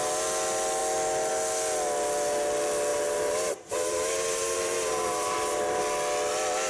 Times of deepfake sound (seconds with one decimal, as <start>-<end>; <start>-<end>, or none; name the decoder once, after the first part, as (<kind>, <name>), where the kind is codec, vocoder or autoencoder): 2.9-5.8 (vocoder, BigVGAN v2)